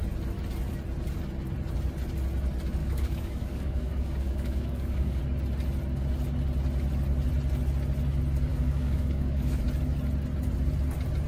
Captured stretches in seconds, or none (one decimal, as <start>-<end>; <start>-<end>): 0.0-2.8; 5.2-8.5; 9.6-11.3